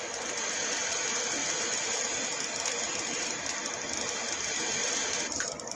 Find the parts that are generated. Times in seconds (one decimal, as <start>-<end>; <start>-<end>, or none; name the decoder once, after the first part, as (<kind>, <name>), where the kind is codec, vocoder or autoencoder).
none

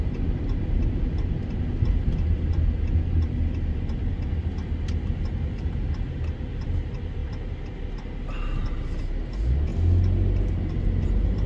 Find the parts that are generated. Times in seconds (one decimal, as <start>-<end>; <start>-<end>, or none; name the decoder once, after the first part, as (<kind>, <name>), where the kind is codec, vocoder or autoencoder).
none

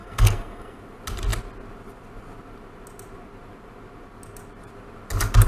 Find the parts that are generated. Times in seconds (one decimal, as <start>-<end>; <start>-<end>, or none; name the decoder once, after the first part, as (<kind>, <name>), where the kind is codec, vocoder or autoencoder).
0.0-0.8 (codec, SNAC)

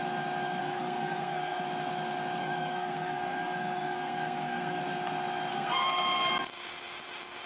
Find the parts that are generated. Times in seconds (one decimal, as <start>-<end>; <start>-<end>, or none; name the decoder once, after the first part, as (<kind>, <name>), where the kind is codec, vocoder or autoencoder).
0.6-1.6 (codec, SNAC); 2.4-4.8; 5.5-6.3

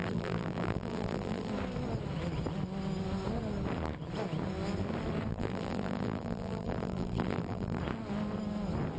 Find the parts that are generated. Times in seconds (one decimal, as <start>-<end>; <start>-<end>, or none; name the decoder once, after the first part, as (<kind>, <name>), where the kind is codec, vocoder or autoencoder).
0.0-1.5 (vocoder, BigVGAN v2); 5.3-7.8